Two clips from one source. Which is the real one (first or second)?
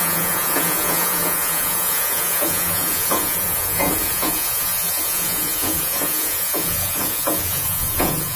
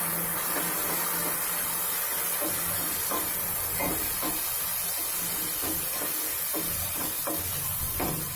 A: second